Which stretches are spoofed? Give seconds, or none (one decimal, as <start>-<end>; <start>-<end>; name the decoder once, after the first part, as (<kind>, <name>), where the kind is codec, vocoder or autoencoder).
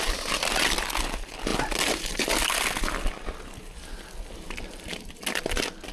none